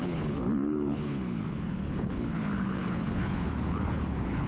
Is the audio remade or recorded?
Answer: remade